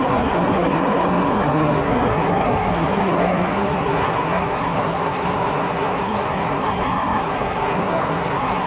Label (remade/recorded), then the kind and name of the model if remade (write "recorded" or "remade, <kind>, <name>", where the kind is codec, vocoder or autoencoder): remade, codec, SNAC